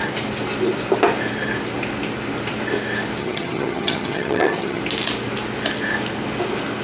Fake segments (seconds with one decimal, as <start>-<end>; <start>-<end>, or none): 3.2-4.8